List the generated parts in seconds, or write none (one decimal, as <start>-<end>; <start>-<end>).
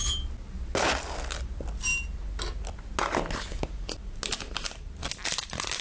none